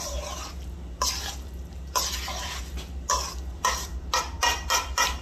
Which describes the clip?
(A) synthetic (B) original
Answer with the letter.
B